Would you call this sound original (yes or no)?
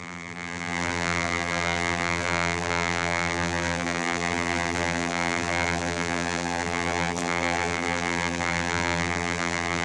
no